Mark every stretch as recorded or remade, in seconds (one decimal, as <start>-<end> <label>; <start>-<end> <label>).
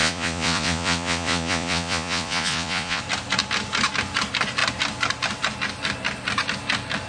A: 0.0-3.0 remade; 3.0-7.1 recorded